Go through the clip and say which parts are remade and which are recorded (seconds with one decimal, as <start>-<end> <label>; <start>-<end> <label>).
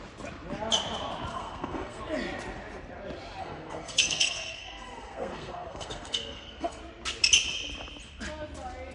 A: 0.0-1.3 recorded; 1.3-2.0 remade; 2.0-3.4 recorded; 3.4-6.8 remade; 6.8-8.9 recorded